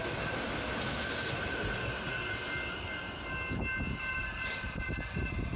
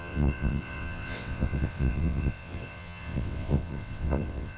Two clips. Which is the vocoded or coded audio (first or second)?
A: second